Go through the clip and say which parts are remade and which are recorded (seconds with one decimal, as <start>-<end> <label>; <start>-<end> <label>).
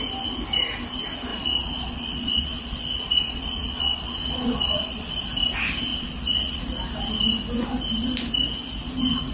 0.0-1.3 recorded; 1.3-5.1 remade; 5.1-5.9 recorded; 5.9-6.6 remade; 6.6-9.3 recorded